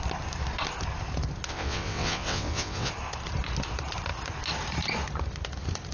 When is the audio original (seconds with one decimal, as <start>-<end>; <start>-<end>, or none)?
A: 0.0-1.5; 2.9-5.9